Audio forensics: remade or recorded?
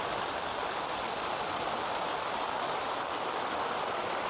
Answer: recorded